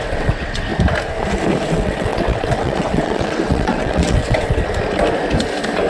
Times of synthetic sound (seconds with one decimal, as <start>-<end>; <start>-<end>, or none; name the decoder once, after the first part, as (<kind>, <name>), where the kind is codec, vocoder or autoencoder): 0.0-0.7 (vocoder, WaveNeXt); 1.7-4.6